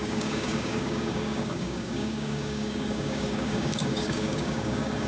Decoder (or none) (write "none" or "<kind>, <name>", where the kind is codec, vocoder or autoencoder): codec, DAC